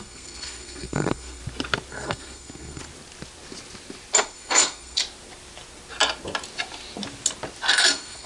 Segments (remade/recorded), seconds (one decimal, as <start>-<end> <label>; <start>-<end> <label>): 0.0-1.4 remade; 1.4-1.9 recorded; 1.9-2.8 remade; 2.8-4.2 recorded; 4.2-5.0 remade; 5.0-7.7 recorded; 7.7-8.3 remade